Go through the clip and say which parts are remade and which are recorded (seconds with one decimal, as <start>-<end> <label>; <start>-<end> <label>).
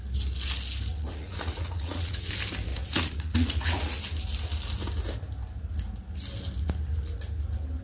0.0-0.9 recorded; 0.9-2.3 remade; 2.3-2.7 recorded; 2.7-4.0 remade; 4.0-7.8 recorded